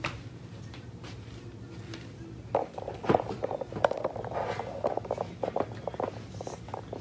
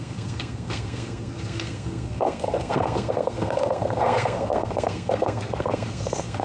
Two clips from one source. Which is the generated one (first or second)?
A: second